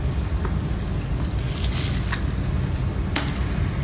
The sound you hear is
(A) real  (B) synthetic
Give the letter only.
A